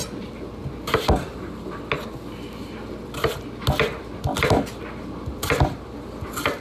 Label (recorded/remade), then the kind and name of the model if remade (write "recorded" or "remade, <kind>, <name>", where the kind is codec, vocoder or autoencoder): recorded